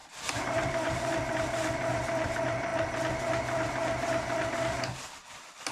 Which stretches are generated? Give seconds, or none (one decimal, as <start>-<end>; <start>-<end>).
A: 0.0-1.3